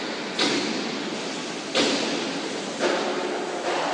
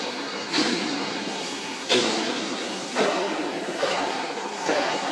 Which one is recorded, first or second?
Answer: first